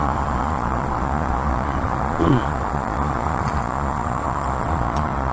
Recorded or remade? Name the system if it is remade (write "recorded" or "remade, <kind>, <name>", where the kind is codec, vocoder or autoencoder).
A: remade, vocoder, Vocos